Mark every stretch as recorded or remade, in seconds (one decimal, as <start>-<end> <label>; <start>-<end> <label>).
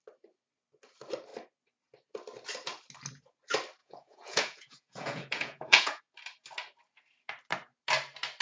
0.0-3.8 recorded; 3.8-6.0 remade; 6.0-8.4 recorded